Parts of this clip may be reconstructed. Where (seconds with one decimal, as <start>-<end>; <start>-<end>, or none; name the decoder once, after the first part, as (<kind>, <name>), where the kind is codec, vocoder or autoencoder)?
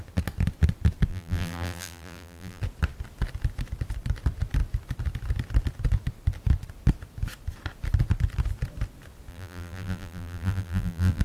1.1-2.6 (vocoder, BigVGAN v2); 9.3-11.2